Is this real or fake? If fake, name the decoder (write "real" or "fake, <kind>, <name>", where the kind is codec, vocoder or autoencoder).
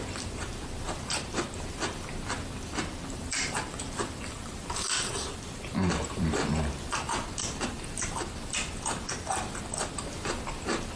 fake, vocoder, BigVGAN v2